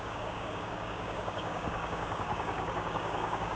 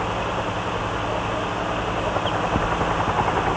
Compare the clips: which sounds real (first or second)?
second